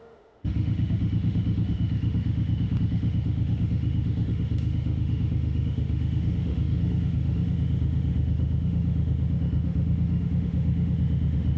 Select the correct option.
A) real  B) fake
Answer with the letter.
B